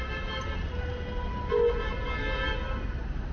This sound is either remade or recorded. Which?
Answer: recorded